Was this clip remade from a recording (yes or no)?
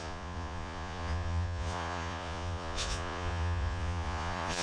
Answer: yes